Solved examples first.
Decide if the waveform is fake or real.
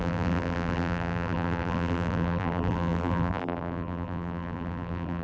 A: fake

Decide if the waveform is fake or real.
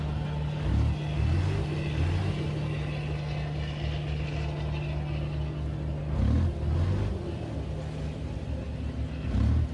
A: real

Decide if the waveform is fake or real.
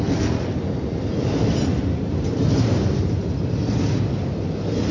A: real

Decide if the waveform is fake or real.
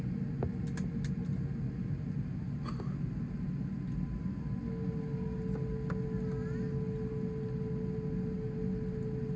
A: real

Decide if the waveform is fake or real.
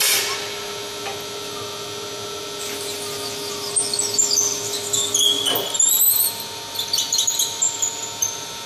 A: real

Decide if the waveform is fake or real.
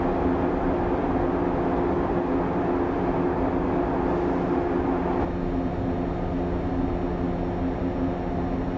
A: real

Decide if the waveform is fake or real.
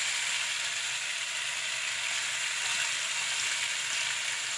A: real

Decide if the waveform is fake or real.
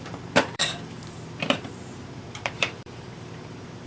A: fake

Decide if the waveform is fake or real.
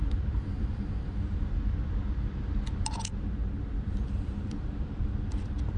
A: fake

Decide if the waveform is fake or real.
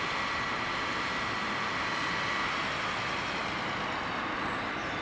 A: real